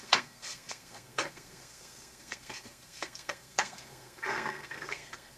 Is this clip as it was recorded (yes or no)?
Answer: no